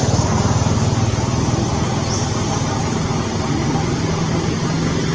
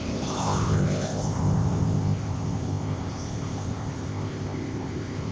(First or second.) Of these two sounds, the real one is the first